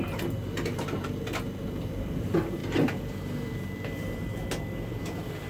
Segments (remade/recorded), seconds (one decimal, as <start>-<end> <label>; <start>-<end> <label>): 0.0-5.5 recorded